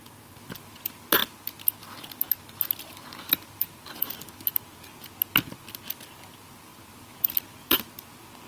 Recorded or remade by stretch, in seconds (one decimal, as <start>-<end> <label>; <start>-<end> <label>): 0.0-8.5 recorded